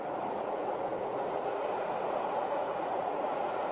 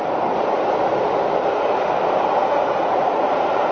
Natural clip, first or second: second